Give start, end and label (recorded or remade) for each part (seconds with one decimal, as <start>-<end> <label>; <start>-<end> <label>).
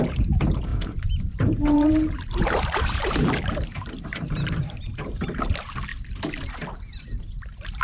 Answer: 0.0-0.7 recorded; 0.7-5.4 remade; 5.4-7.8 recorded